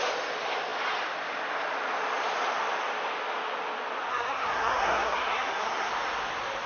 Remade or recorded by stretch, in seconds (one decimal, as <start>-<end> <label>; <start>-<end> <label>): 0.0-4.1 recorded; 4.1-5.9 remade; 5.9-6.7 recorded